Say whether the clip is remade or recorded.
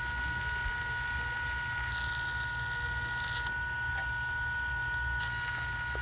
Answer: recorded